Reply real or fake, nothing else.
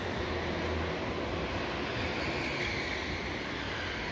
real